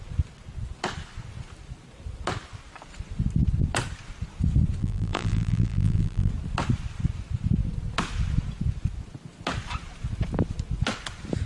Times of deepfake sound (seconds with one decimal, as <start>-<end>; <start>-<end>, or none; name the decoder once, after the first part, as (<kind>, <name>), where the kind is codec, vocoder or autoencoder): 4.8-6.3 (vocoder, BigVGAN v2)